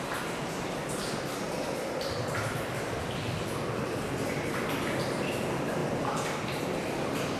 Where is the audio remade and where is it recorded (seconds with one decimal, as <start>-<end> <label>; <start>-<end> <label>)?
0.0-5.8 recorded; 5.8-6.6 remade; 6.6-7.4 recorded